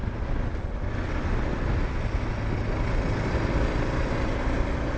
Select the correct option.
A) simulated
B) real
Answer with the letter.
B